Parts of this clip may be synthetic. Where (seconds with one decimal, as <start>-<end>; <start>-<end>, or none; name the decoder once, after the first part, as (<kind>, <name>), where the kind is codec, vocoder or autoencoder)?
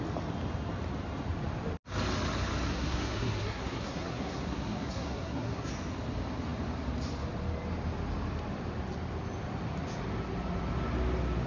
2.7-5.7 (codec, SNAC)